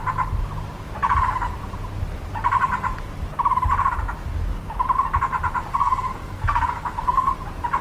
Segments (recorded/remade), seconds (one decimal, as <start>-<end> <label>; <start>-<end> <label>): 0.0-5.7 recorded; 5.7-7.3 remade; 7.3-7.8 recorded